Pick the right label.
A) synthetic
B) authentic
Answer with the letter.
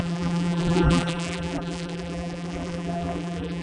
A